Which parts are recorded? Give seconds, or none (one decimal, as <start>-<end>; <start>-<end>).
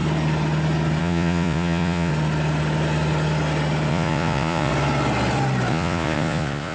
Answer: 0.0-1.0; 2.1-3.9; 4.7-5.7